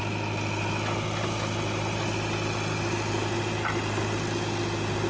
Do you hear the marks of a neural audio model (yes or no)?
no